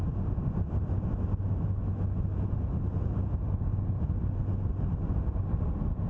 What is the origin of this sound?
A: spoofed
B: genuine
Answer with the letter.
B